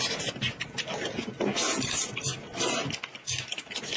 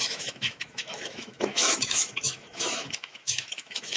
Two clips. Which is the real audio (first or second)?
first